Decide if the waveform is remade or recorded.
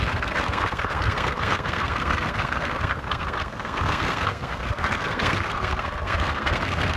remade